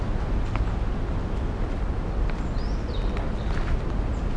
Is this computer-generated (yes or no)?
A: no